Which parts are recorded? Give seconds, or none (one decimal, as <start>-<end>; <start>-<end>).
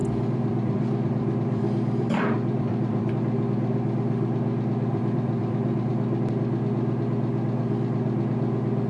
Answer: 3.1-4.9; 5.9-8.9